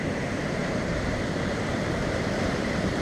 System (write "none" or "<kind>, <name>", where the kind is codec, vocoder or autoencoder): vocoder, BigVGAN v2